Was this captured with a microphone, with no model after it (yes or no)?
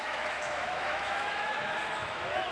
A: no